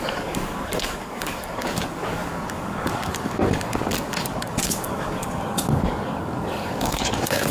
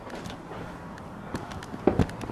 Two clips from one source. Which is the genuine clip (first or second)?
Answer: second